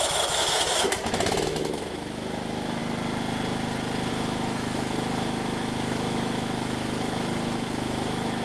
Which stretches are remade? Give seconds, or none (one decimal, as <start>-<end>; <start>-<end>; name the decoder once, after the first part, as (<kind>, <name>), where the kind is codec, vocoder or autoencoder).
0.0-2.8 (autoencoder, DAC-VAE); 4.1-8.4